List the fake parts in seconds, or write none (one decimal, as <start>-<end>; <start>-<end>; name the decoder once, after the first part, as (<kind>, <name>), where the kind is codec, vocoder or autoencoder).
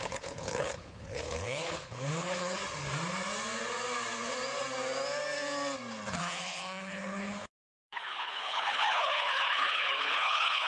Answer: 0.0-2.6 (codec, HILCodec); 6.2-10.7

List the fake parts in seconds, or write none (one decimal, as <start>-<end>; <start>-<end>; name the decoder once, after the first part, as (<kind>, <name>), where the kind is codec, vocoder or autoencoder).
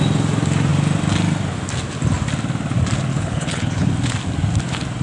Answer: 3.1-3.9 (codec, HILCodec)